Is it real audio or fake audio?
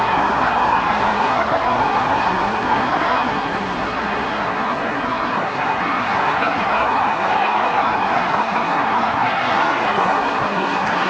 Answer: fake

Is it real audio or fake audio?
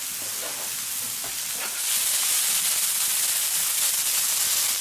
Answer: real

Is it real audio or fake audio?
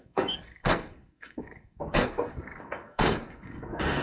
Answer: fake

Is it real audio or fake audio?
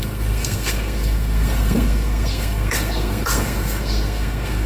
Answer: fake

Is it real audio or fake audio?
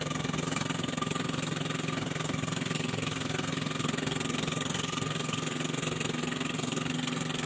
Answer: fake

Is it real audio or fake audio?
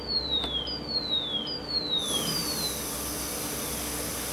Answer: real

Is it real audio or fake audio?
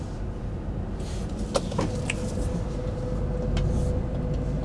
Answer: real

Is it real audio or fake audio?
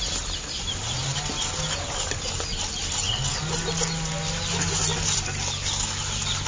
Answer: real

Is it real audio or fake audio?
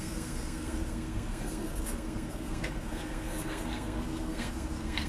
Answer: fake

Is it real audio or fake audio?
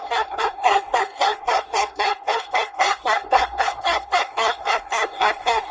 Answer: fake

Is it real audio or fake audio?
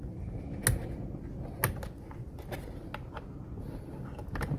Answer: real